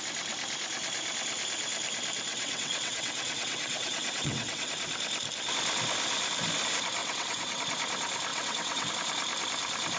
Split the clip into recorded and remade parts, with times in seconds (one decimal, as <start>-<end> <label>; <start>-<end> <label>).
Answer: 0.0-2.3 recorded; 2.3-4.7 remade; 4.7-7.0 recorded; 7.0-7.6 remade; 7.6-8.3 recorded; 8.3-8.9 remade; 8.9-10.0 recorded